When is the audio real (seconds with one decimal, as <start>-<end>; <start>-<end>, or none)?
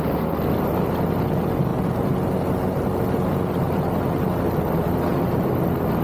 1.7-5.3